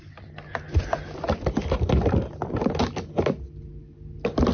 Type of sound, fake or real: real